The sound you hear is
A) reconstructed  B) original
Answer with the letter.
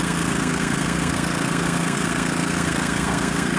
A